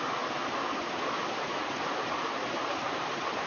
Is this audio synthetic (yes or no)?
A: no